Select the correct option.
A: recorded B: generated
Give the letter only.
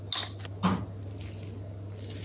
A